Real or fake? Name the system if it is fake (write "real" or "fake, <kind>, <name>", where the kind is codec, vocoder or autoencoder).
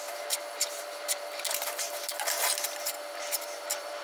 real